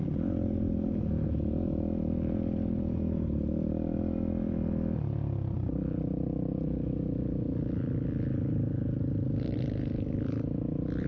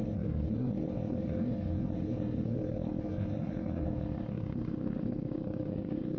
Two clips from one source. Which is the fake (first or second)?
second